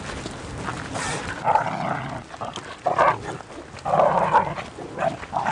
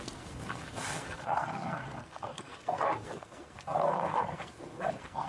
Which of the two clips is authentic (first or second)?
first